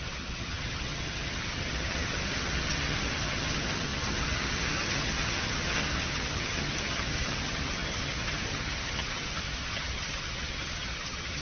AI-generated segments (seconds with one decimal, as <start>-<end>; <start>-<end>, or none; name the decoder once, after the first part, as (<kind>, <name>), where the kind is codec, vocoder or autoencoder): 0.0-11.4 (vocoder, HiFi-GAN)